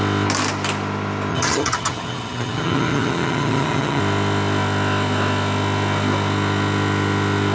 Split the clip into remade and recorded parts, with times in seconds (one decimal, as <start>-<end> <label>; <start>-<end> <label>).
0.0-1.3 recorded; 1.3-4.0 remade; 4.0-7.5 recorded